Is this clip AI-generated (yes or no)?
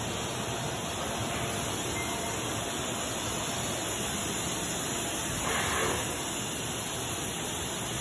no